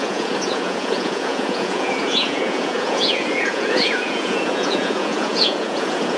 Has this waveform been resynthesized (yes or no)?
yes